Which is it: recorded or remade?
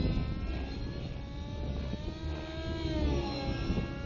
recorded